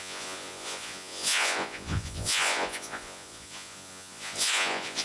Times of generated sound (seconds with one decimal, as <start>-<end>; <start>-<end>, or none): 0.0-5.0